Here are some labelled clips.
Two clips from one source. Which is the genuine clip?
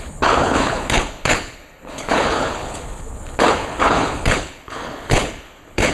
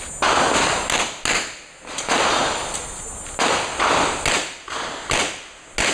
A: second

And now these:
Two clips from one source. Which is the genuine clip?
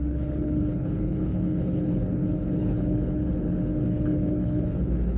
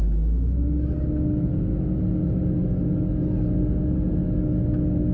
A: second